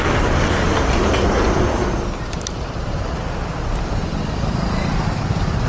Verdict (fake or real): fake